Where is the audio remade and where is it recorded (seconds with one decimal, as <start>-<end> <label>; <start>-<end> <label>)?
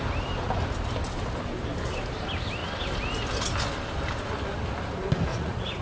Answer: 0.0-5.3 recorded; 5.3-5.8 remade